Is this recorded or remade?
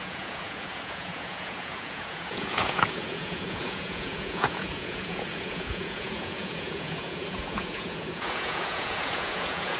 remade